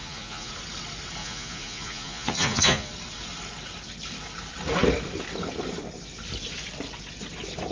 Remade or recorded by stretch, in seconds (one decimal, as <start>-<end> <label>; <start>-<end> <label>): 0.0-0.5 remade; 0.5-1.2 recorded; 1.2-2.9 remade; 2.9-7.7 recorded